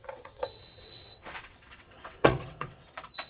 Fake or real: fake